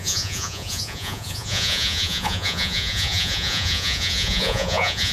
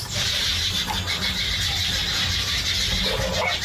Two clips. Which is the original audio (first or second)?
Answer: second